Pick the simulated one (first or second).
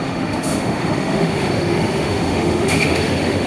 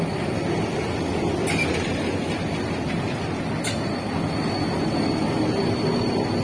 first